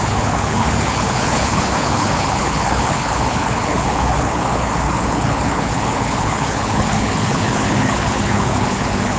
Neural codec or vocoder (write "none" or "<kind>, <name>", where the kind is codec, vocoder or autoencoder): codec, HILCodec